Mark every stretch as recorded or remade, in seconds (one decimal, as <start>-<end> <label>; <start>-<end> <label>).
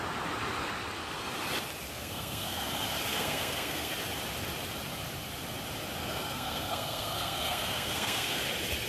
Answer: 0.0-1.9 recorded; 1.9-2.7 remade; 2.7-3.1 recorded; 3.1-3.9 remade; 3.9-6.0 recorded; 6.0-8.4 remade; 8.4-8.9 recorded